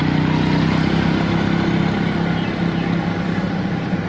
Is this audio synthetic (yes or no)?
no